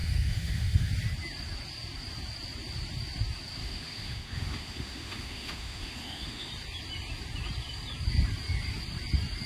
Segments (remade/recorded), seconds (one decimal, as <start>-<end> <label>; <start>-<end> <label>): 0.0-0.9 remade; 0.9-3.6 recorded; 3.6-6.5 remade; 6.5-9.5 recorded